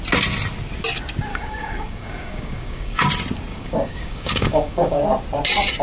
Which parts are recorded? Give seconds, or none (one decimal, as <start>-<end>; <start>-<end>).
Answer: 0.0-1.3; 3.1-3.5; 5.0-5.8